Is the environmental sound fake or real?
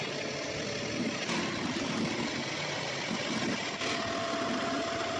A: real